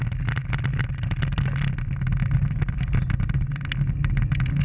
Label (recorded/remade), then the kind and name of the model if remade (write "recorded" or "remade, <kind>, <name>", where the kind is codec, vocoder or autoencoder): recorded